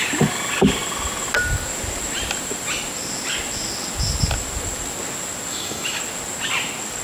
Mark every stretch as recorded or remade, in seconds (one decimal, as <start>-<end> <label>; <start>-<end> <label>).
0.0-5.5 recorded; 5.5-6.0 remade; 6.0-7.0 recorded